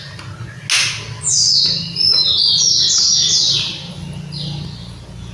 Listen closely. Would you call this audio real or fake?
real